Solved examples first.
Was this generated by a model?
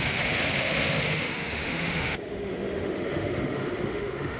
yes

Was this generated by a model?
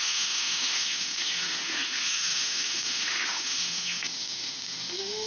yes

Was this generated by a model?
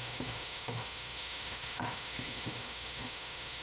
yes